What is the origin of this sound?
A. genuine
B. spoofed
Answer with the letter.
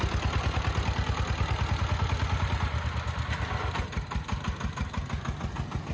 A